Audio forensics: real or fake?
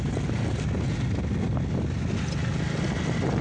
real